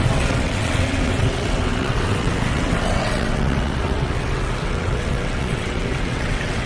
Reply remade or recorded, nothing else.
remade